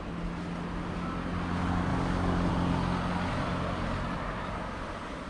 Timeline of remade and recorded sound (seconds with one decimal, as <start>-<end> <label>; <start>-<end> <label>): 0.0-1.9 recorded; 1.9-2.5 remade; 2.5-5.3 recorded